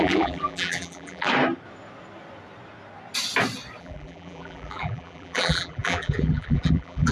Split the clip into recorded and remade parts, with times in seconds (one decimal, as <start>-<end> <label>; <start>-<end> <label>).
0.0-1.3 remade; 1.3-3.8 recorded; 3.8-7.1 remade